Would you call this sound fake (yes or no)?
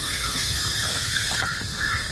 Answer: yes